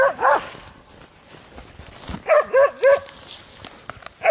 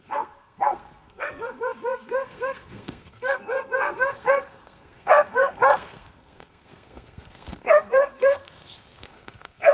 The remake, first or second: second